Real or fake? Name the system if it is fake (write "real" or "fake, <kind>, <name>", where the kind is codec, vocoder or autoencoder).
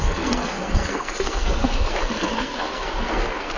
fake, codec, SNAC